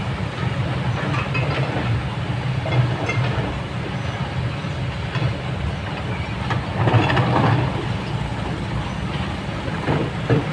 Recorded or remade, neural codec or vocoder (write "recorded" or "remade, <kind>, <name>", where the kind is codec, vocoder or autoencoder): recorded